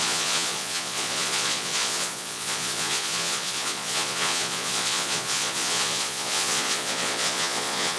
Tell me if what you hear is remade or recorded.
remade